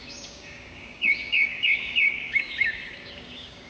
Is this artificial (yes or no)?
yes